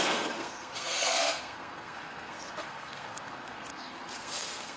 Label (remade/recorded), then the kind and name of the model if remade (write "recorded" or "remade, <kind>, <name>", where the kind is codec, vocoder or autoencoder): remade, codec, SNAC